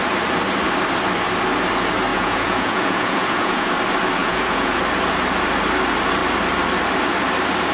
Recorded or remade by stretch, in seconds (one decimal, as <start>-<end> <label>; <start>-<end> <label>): 0.0-2.1 recorded; 2.1-3.7 remade; 3.7-4.2 recorded; 4.2-4.8 remade; 4.8-7.7 recorded